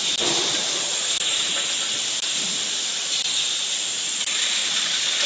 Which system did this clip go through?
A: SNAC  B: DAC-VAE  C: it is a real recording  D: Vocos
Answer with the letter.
C